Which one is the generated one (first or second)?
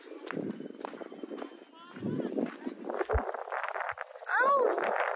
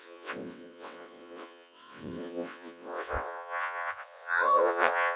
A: second